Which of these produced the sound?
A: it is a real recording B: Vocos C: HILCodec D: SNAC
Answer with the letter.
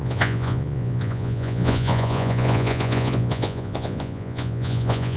B